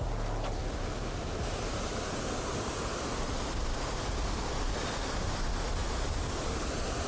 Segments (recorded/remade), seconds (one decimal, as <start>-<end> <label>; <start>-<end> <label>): 0.0-7.1 recorded